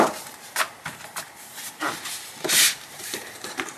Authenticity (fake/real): fake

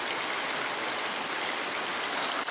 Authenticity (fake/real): real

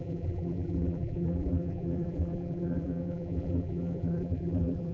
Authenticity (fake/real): fake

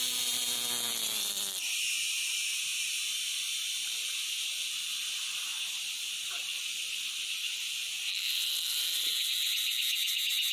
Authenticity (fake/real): fake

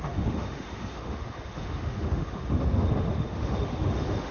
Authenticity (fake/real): fake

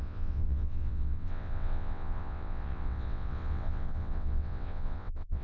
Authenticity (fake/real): fake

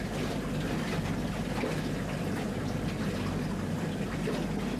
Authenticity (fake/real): real